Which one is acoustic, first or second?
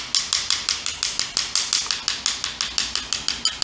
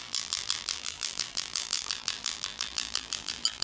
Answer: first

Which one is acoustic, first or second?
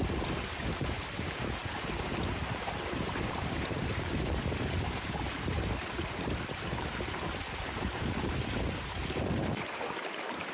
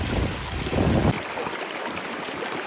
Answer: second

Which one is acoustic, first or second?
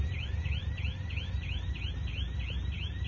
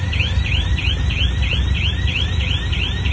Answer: first